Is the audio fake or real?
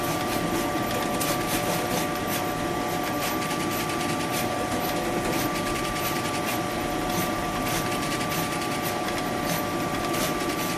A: fake